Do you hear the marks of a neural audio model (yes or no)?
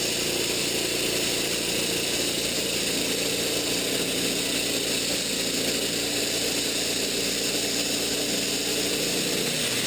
no